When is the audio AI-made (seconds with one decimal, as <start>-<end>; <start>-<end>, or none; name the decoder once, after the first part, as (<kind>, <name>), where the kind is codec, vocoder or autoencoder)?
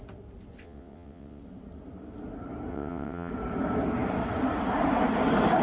0.6-1.4 (vocoder, WaveNeXt); 2.7-3.3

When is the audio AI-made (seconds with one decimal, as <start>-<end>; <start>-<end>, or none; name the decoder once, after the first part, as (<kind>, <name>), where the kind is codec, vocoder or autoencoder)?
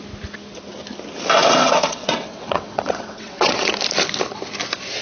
1.6-3.7 (vocoder, WaveNeXt)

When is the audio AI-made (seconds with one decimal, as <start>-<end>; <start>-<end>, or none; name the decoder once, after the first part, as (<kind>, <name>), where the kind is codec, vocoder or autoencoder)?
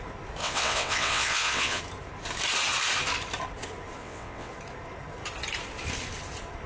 0.4-1.8 (vocoder, WaveNeXt); 4.0-4.5